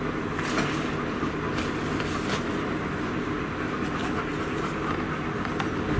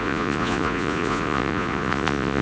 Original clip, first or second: first